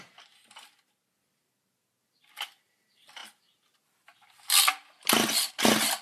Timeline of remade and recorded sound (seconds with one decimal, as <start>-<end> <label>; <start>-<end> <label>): 0.0-6.0 recorded